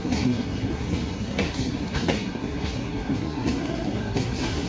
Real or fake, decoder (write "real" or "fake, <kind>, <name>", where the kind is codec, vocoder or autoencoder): fake, codec, SNAC